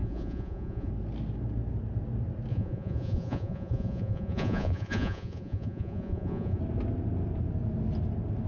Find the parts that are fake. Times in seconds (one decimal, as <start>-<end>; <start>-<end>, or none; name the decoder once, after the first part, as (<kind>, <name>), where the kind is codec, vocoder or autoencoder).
0.0-0.9 (vocoder, Vocos); 2.5-6.6